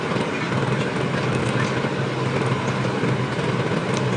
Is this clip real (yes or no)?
yes